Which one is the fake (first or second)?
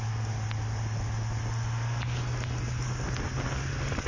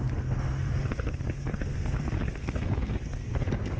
second